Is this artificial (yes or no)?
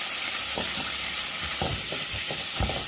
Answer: no